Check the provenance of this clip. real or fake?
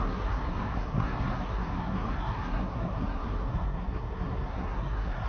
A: fake